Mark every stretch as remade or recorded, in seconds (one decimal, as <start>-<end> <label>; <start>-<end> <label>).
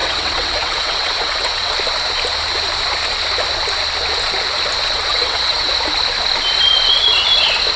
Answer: 0.0-1.8 remade; 1.8-5.1 recorded; 5.1-5.7 remade; 5.7-7.8 recorded